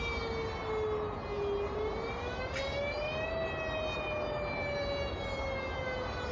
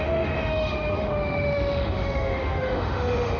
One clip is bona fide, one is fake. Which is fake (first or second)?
second